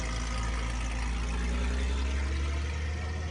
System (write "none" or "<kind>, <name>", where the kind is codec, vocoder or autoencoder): none